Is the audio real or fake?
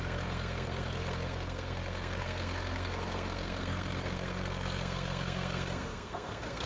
fake